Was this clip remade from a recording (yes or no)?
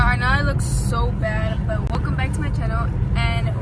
no